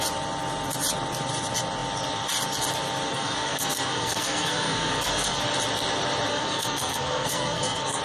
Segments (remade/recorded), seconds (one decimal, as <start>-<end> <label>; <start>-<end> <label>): 0.0-3.1 recorded; 3.1-5.4 remade; 5.4-6.3 recorded; 6.3-8.0 remade